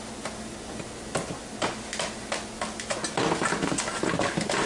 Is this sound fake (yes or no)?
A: no